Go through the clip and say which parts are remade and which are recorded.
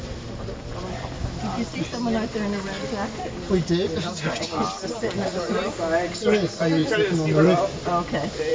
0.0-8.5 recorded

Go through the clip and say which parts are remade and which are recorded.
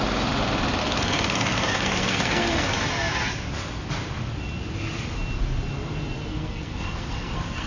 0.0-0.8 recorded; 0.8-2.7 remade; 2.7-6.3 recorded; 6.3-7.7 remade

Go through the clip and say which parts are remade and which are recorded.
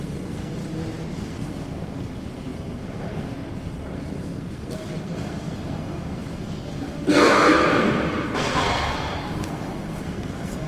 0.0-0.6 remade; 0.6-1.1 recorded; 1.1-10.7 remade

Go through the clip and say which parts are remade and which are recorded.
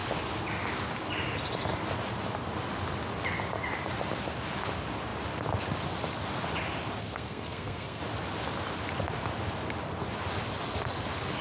0.0-7.0 recorded; 7.0-8.0 remade; 8.0-11.4 recorded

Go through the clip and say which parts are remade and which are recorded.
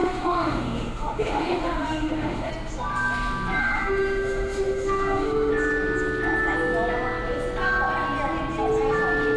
0.0-2.5 remade; 2.5-3.6 recorded; 3.6-5.5 remade; 5.5-9.4 recorded